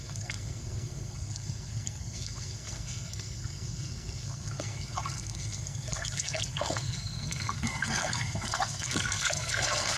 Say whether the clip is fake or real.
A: fake